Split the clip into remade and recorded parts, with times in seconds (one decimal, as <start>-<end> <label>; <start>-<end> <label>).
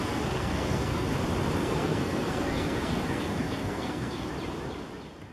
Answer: 0.0-1.1 remade; 1.1-1.6 recorded; 1.6-4.3 remade; 4.3-5.3 recorded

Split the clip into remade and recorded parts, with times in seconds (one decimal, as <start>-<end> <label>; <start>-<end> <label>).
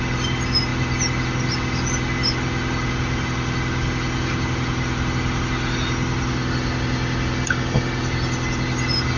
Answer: 0.0-9.2 recorded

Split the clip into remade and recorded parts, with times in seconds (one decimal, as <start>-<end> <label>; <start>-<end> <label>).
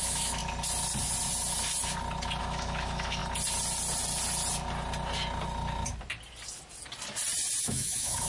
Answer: 0.0-0.4 remade; 0.4-2.4 recorded; 2.4-3.2 remade; 3.2-7.6 recorded; 7.6-8.3 remade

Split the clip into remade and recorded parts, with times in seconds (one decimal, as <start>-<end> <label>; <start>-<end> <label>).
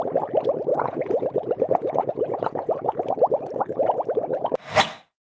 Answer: 0.0-0.7 recorded; 0.7-3.0 remade; 3.0-5.3 recorded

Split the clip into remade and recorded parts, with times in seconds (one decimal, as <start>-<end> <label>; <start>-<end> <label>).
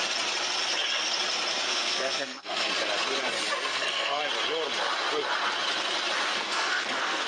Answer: 0.0-1.7 recorded; 1.7-2.7 remade; 2.7-3.7 recorded; 3.7-4.2 remade; 4.2-6.3 recorded; 6.3-7.3 remade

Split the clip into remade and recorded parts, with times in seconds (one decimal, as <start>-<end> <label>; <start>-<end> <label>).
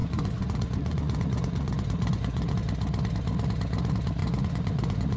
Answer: 0.0-2.5 remade; 2.5-4.2 recorded; 4.2-5.2 remade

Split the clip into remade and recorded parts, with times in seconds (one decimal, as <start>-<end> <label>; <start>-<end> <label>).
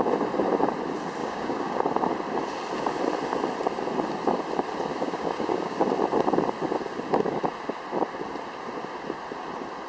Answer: 0.0-1.2 recorded; 1.2-1.8 remade; 1.8-4.9 recorded; 4.9-5.8 remade; 5.8-9.9 recorded